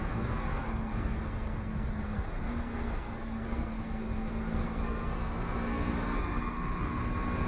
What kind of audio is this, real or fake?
fake